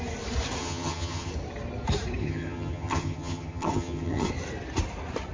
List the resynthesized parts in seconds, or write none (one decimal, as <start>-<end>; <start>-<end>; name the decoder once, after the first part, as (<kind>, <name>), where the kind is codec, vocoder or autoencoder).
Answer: 0.6-1.3 (vocoder, HiFi-GAN); 2.2-4.3